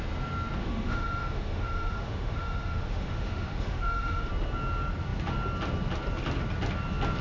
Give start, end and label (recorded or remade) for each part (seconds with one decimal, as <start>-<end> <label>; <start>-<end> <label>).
0.0-0.6 recorded; 0.6-4.3 remade; 4.3-7.2 recorded